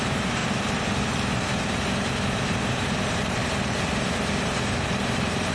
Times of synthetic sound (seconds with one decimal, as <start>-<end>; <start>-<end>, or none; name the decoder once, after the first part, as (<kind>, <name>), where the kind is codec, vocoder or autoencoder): 0.0-0.4 (vocoder, BigVGAN v2); 1.6-3.4; 4.6-5.5